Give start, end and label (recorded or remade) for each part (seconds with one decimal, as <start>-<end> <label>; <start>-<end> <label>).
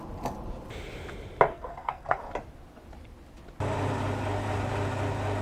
0.0-1.5 recorded; 1.5-2.2 remade; 2.2-5.4 recorded